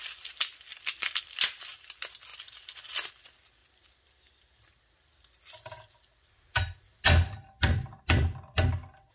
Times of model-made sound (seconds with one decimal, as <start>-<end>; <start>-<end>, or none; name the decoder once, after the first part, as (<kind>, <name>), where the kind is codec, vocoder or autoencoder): 0.7-1.4 (vocoder, BigVGAN v2); 3.6-8.0